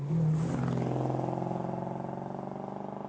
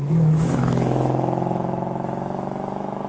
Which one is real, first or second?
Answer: first